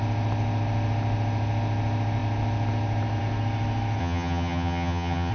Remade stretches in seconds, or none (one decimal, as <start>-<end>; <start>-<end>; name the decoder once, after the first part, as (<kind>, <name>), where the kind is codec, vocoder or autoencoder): 4.0-5.3 (vocoder, HiFi-GAN)